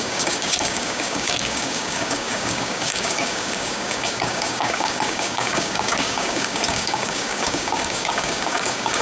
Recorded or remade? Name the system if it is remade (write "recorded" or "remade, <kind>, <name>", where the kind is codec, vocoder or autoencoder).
remade, codec, DAC